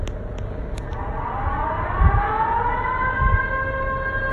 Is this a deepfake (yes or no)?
no